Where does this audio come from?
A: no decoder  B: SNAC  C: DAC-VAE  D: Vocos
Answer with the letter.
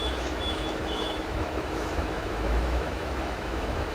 C